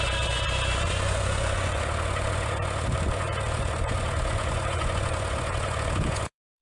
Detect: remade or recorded remade